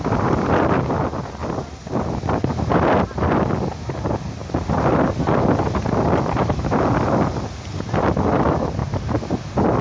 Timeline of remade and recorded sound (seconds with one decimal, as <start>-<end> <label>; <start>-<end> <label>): 0.0-9.8 recorded